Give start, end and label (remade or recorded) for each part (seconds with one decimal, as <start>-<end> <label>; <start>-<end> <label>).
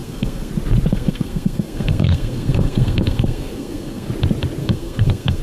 0.0-0.5 remade; 0.5-0.9 recorded; 0.9-4.1 remade; 4.1-4.6 recorded; 4.6-5.4 remade